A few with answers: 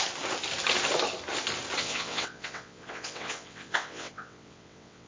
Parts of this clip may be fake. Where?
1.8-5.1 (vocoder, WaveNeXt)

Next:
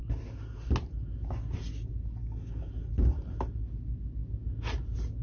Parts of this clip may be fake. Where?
2.2-2.7 (codec, DAC)

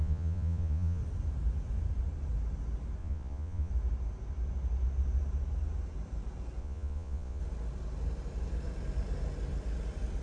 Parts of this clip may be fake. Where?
0.0-1.0 (vocoder, Vocos); 3.0-3.7; 6.6-7.4

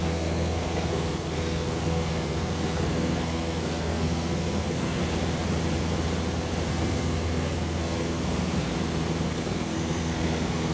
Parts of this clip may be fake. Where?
0.0-5.0 (codec, SNAC); 6.7-8.7; 9.3-10.7